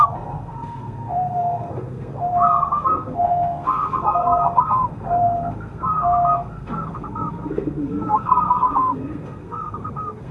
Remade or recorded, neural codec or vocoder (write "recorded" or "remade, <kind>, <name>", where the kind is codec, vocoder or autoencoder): remade, codec, SNAC